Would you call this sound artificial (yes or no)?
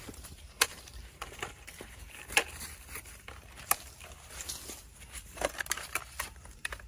yes